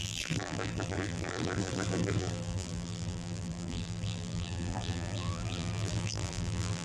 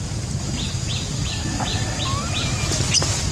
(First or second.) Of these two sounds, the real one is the second